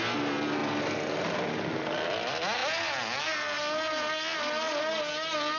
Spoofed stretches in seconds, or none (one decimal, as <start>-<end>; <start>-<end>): none